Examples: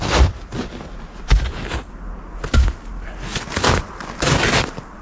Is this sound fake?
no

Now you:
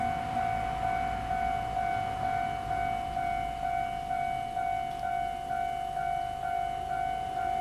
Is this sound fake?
no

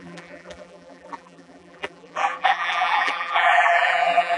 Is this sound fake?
yes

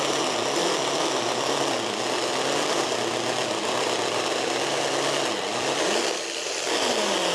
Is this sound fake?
no